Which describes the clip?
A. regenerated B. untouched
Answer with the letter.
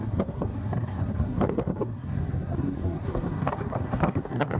A